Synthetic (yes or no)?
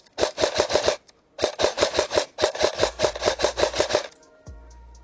no